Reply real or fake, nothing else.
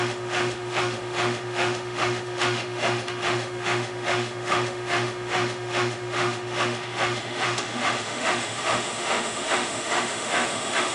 fake